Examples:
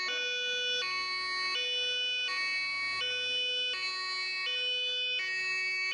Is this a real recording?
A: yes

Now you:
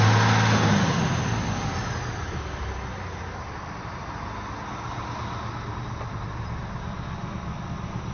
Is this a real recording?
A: yes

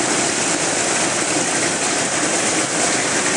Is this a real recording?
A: yes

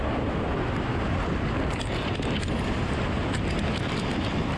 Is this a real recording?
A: yes